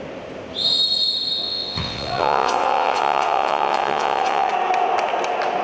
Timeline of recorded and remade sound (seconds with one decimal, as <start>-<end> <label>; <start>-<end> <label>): 0.0-1.4 recorded; 1.4-4.5 remade; 4.5-5.6 recorded